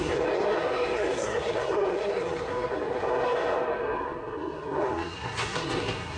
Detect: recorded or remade remade